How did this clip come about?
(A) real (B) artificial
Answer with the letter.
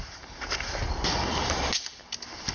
A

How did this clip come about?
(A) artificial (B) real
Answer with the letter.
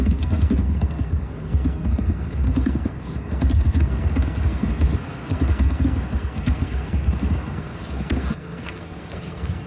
A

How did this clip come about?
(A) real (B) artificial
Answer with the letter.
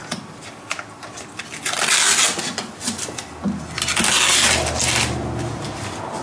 A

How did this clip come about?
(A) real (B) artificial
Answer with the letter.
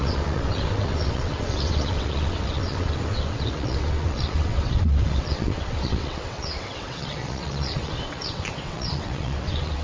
B